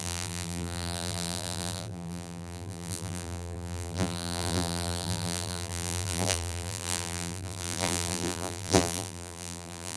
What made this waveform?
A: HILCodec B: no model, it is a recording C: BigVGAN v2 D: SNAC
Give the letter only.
C